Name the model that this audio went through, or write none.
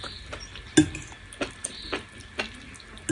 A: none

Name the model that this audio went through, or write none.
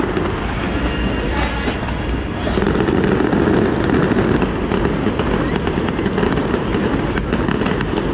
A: none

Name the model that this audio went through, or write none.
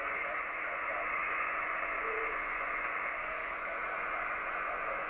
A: vocoder, Vocos